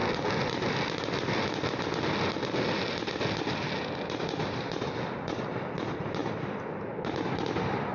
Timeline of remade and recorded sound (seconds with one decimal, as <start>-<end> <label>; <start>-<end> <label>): 0.0-7.9 recorded